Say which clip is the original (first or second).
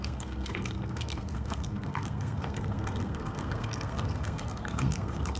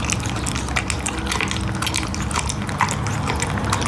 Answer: second